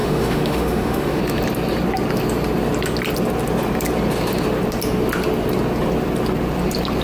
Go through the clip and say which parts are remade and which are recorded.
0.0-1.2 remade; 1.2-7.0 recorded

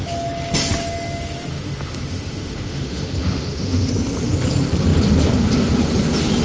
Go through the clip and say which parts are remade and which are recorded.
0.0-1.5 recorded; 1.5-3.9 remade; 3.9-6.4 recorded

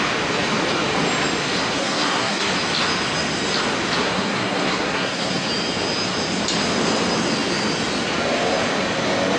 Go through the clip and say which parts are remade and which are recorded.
0.0-1.7 recorded; 1.7-2.5 remade; 2.5-4.0 recorded; 4.0-5.5 remade; 5.5-9.4 recorded

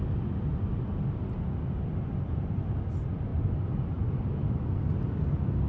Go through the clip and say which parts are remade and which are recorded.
0.0-5.7 recorded